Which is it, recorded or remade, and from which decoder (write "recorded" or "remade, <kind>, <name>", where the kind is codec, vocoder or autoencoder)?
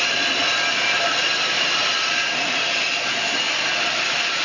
recorded